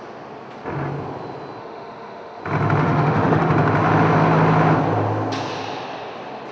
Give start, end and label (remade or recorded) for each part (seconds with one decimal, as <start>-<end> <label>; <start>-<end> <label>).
0.0-1.6 recorded; 1.6-2.4 remade; 2.4-2.8 recorded; 2.8-3.5 remade; 3.5-6.5 recorded